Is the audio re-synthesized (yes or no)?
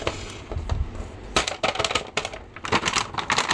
no